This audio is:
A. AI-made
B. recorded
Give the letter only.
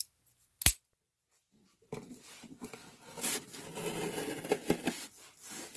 B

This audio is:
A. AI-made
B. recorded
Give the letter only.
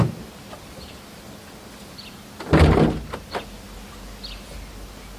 B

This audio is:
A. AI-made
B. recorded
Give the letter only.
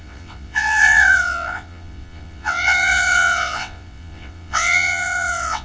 A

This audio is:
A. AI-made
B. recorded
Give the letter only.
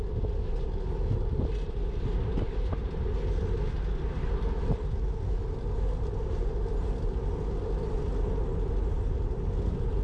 B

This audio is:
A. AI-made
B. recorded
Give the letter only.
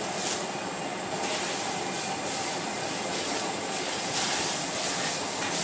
B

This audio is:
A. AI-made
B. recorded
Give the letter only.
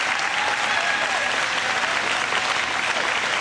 B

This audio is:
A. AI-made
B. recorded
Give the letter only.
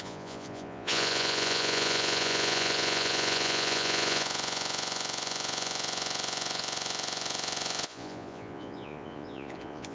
A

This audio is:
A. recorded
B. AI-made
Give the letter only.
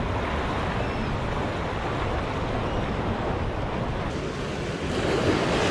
A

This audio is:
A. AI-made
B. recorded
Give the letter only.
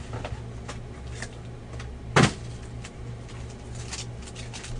B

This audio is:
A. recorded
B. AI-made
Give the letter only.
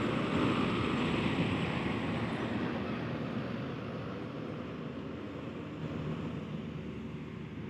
A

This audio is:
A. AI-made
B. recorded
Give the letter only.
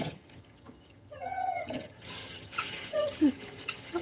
A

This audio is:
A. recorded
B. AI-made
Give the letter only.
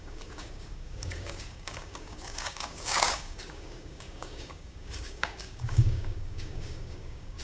B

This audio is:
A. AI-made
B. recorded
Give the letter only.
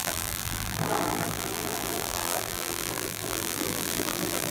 A